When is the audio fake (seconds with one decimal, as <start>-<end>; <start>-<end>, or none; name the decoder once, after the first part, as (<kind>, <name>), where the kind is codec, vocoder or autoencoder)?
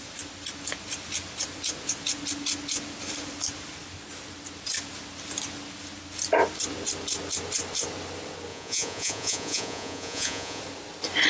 8.5-10.6 (vocoder, Vocos)